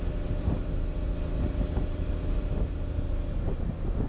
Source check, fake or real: real